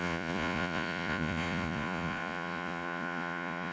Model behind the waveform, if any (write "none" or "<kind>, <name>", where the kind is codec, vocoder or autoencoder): vocoder, Vocos